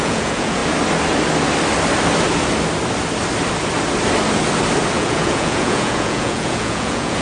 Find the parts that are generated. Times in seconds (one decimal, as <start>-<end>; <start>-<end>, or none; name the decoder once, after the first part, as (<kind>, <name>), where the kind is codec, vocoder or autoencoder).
0.0-0.6 (vocoder, Vocos); 4.9-7.2